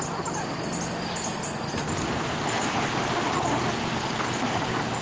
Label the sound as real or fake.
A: fake